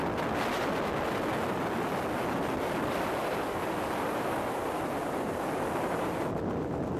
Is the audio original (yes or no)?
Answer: yes